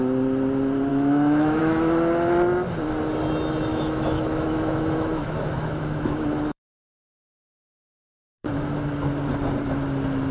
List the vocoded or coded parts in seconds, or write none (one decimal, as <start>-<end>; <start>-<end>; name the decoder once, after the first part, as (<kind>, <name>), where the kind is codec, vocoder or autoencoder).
0.9-1.6 (autoencoder, DAC-VAE); 3.7-8.6